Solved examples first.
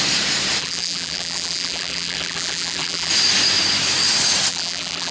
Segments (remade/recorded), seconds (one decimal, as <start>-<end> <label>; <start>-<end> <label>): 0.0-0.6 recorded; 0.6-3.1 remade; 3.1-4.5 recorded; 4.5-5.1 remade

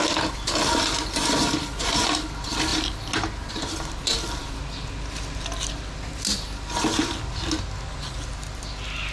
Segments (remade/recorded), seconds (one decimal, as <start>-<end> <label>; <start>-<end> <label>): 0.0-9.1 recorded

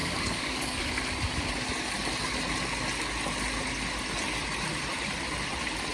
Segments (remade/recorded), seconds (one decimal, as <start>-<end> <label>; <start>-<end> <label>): 0.0-0.9 remade; 0.9-5.9 recorded

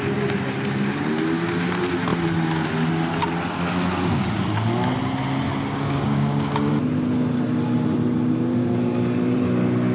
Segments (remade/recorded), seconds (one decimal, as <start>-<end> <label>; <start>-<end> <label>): 0.0-5.6 recorded; 5.6-6.7 remade; 6.7-9.9 recorded

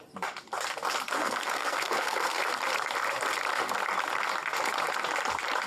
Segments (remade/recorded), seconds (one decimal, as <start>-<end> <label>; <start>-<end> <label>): 0.0-1.2 recorded; 1.2-2.4 remade; 2.4-5.7 recorded